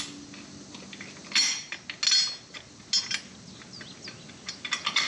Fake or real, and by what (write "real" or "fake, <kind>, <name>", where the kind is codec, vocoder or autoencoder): real